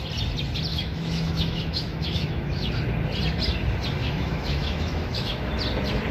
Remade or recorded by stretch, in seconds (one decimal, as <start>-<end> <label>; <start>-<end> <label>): 0.0-0.7 recorded; 0.7-2.7 remade; 2.7-4.0 recorded; 4.0-5.5 remade; 5.5-6.1 recorded